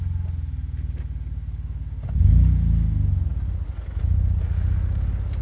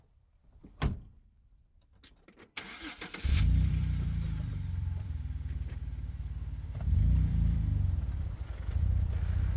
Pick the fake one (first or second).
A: second